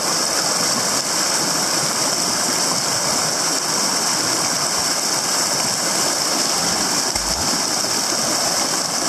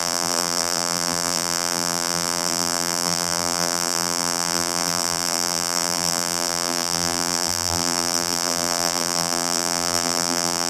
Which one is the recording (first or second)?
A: first